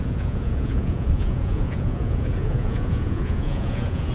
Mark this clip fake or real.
fake